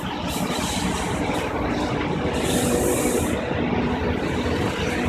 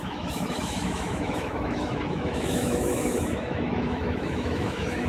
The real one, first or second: first